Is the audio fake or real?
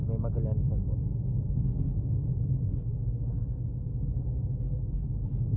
real